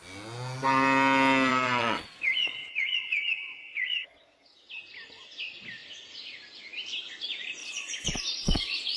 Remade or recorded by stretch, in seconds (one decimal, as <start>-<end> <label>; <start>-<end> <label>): 0.0-1.5 recorded; 1.5-4.7 remade; 4.7-7.6 recorded; 7.6-9.0 remade